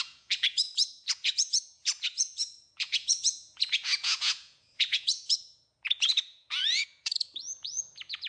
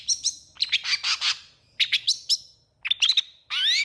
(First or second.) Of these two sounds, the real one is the second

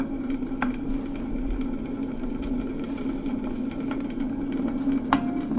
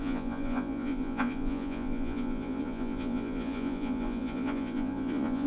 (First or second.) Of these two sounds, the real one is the first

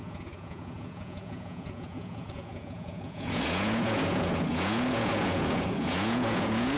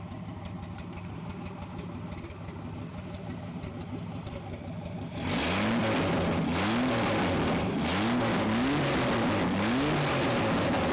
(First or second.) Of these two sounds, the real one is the second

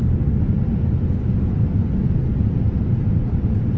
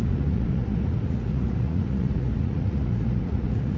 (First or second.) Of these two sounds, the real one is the first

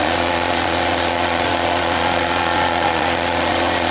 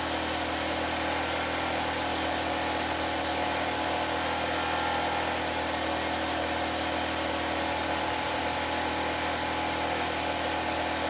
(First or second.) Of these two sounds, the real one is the second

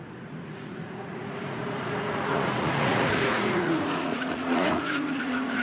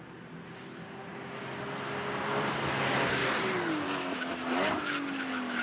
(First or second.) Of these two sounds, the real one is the second